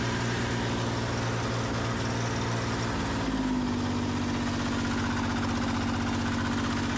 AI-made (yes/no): no